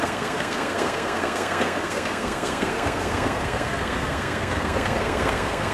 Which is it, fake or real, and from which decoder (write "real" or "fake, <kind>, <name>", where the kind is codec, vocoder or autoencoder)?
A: fake, codec, SNAC